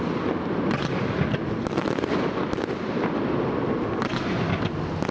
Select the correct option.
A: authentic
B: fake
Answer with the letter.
A